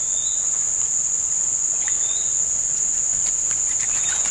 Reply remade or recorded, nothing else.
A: remade